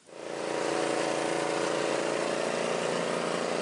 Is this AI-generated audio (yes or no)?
no